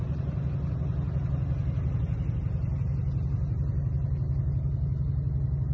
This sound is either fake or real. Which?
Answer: real